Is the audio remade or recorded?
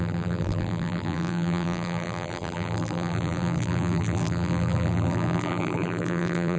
remade